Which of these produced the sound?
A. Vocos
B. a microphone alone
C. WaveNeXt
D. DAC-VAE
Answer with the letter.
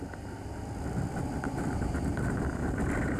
B